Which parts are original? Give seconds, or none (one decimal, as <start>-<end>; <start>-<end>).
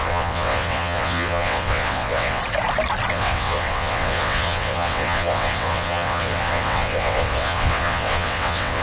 2.4-3.1